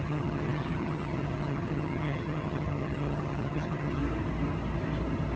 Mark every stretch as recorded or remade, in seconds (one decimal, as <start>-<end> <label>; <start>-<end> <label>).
0.0-4.0 remade; 4.0-5.4 recorded